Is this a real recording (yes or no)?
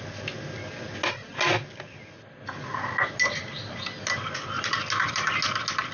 yes